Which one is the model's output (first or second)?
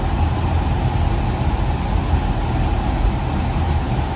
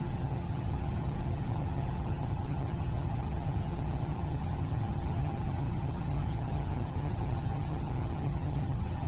second